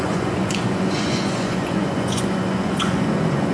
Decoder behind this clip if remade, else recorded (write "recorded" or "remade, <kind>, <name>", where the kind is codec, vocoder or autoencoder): remade, vocoder, Vocos